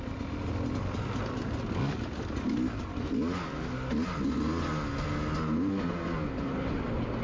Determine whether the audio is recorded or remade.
recorded